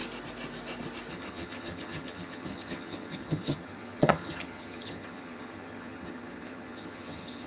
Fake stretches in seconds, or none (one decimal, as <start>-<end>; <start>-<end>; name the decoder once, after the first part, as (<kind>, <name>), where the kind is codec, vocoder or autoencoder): 1.1-7.5 (vocoder, HiFi-GAN)